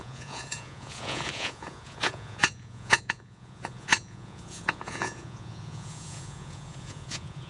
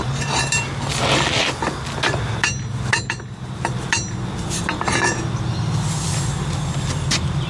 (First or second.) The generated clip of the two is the first